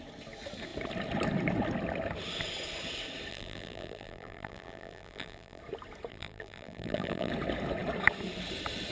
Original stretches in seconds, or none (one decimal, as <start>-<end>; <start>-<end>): 0.0-3.3; 5.6-6.1; 7.3-8.9